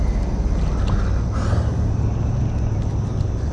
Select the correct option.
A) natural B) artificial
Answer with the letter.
A